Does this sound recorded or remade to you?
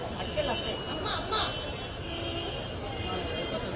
recorded